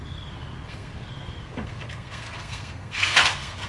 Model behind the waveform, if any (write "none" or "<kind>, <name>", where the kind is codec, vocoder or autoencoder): codec, SNAC